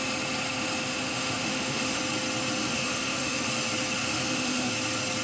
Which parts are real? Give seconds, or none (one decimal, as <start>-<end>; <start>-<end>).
0.0-0.9; 2.0-2.6; 3.5-4.0; 4.7-5.2